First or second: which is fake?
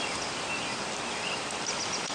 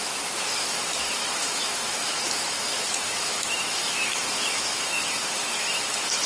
second